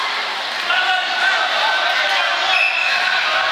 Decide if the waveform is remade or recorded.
recorded